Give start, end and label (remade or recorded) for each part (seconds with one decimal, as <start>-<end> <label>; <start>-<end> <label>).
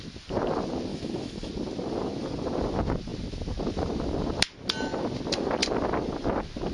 0.0-0.9 recorded; 0.9-1.5 remade; 1.5-6.7 recorded